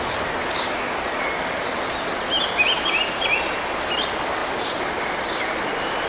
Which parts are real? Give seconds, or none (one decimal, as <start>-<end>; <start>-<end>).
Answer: 0.0-6.1